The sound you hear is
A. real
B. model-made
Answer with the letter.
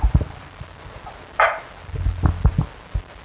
A